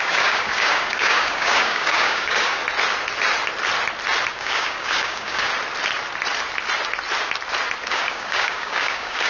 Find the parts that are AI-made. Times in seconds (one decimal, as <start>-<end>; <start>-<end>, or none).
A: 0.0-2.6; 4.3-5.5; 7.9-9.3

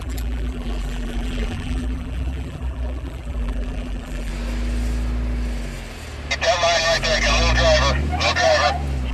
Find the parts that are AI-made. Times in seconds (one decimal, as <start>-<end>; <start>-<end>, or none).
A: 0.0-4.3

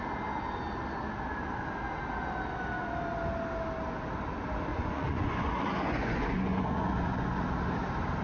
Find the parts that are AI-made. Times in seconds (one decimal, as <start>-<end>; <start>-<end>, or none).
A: 4.7-7.4